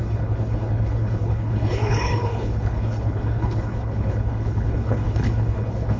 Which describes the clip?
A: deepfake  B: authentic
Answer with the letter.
A